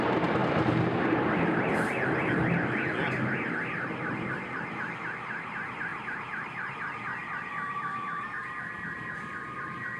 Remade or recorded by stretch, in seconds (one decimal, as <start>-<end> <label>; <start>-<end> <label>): 0.0-5.9 recorded; 5.9-6.8 remade; 6.8-7.2 recorded; 7.2-9.3 remade; 9.3-10.0 recorded